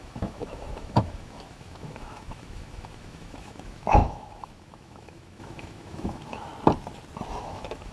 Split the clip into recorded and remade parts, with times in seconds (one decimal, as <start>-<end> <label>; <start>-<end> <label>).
0.0-6.5 remade; 6.5-7.4 recorded; 7.4-7.9 remade